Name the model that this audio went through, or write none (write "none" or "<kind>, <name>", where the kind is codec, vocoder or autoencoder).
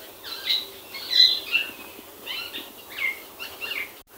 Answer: none